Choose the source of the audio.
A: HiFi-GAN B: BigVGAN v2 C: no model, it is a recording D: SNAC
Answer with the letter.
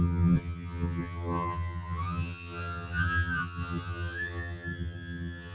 A